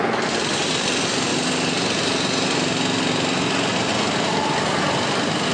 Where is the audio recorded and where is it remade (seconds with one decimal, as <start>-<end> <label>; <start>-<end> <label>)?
0.0-5.5 recorded